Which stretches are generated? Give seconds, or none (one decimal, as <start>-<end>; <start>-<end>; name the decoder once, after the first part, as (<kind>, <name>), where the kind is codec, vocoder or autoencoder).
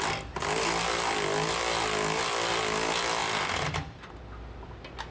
none